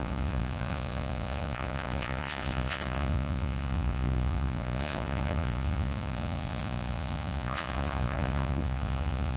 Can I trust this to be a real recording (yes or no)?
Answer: no